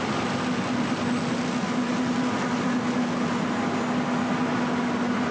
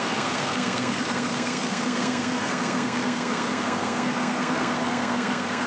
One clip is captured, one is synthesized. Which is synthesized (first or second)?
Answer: second